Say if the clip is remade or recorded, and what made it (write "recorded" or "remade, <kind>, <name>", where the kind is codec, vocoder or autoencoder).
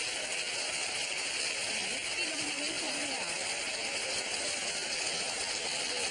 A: recorded